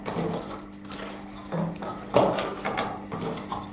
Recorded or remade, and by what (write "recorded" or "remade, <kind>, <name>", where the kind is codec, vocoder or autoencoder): recorded